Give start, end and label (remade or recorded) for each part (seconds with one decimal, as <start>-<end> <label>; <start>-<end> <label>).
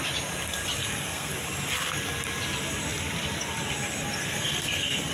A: 0.0-0.8 recorded; 0.8-1.3 remade; 1.3-4.2 recorded; 4.2-5.1 remade